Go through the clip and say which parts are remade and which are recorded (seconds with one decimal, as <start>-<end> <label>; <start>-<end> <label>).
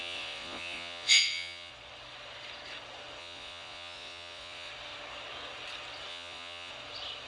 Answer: 0.0-1.7 remade; 1.7-3.2 recorded; 3.2-4.7 remade; 4.7-6.1 recorded; 6.1-6.7 remade; 6.7-7.3 recorded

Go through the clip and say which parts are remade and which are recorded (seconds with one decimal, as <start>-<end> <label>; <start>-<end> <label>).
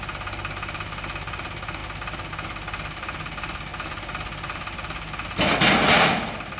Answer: 0.0-6.6 recorded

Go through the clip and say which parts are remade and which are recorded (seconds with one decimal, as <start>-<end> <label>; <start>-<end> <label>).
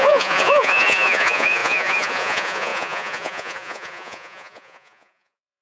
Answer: 0.0-5.6 remade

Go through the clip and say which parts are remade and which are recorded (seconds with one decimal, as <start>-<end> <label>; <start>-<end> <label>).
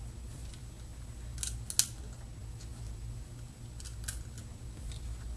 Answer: 0.0-5.4 recorded